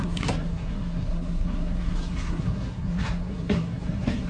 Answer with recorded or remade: remade